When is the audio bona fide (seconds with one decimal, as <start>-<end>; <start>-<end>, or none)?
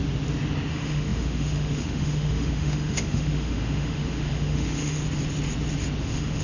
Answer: 0.0-0.7; 5.0-6.0